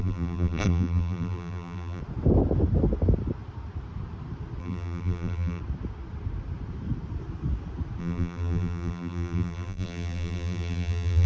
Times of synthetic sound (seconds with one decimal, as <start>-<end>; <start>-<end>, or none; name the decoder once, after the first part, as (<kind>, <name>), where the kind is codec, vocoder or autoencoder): 0.0-2.0 (vocoder, BigVGAN v2); 4.6-5.6; 8.0-11.3